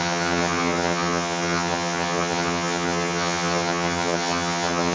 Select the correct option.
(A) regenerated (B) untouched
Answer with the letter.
A